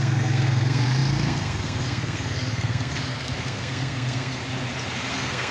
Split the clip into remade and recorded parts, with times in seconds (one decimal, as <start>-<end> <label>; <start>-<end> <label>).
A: 0.0-4.4 remade; 4.4-5.1 recorded; 5.1-5.5 remade